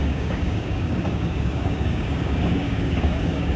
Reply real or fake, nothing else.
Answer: fake